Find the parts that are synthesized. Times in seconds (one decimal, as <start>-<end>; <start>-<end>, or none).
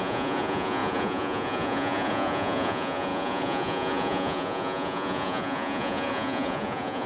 0.0-7.1